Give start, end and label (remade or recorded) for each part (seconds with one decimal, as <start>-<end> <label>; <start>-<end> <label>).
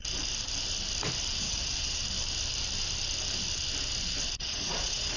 0.0-1.4 recorded; 1.4-2.0 remade; 2.0-4.4 recorded; 4.4-5.2 remade